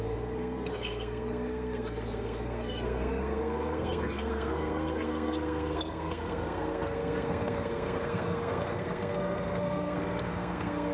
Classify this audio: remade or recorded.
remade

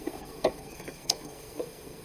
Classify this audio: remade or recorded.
remade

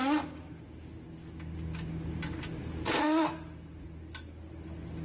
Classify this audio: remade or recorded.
recorded